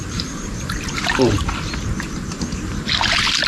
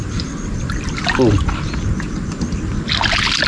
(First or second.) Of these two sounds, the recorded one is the second